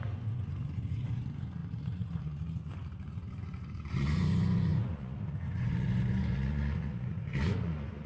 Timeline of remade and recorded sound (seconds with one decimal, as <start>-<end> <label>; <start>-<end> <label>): 0.0-8.1 remade